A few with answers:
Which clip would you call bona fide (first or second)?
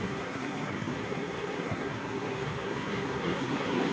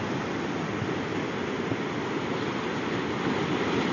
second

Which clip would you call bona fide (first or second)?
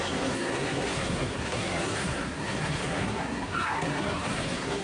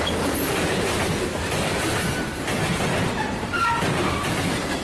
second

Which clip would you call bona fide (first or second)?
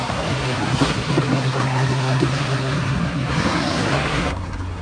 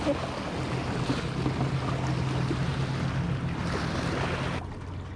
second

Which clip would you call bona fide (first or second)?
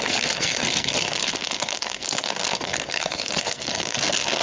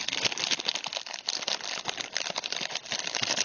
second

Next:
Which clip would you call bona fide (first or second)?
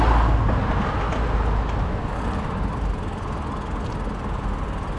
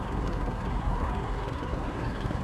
first